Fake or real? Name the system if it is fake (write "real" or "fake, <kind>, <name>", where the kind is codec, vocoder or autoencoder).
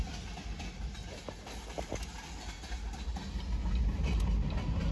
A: real